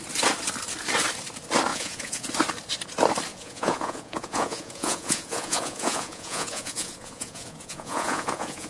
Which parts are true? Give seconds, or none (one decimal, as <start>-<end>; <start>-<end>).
0.0-1.7; 2.3-3.3